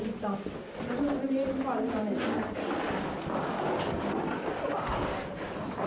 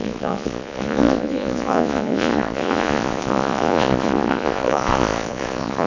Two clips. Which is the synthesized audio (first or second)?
second